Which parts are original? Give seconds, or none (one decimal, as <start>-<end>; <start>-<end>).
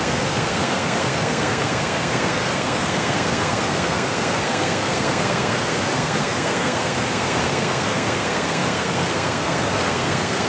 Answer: none